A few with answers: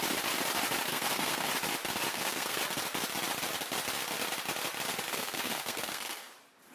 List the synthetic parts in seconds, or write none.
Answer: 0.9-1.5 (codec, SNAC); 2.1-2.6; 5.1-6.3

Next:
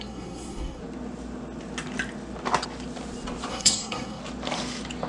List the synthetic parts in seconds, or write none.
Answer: 0.0-0.8 (codec, SNAC); 3.5-4.2

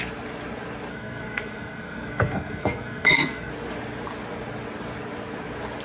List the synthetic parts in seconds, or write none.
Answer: 0.9-3.5 (codec, SNAC)